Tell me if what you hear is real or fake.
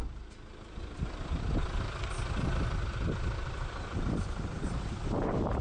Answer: real